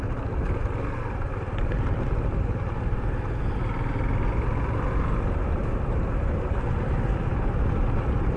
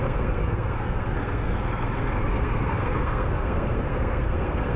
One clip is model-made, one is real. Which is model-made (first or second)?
second